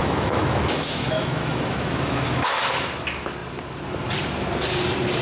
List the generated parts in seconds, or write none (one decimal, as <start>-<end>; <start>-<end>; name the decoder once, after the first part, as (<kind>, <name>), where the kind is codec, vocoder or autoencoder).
0.0-2.6 (autoencoder, DAC-VAE)